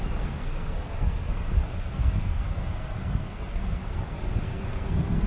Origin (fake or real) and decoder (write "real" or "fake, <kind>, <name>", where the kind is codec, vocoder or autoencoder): fake, codec, SNAC